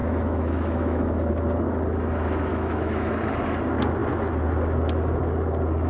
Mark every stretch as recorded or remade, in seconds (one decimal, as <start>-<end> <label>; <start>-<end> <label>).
0.0-1.3 remade; 1.3-2.5 recorded; 2.5-3.1 remade; 3.1-5.9 recorded